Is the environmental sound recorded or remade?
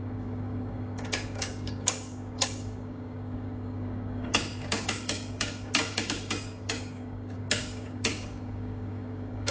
remade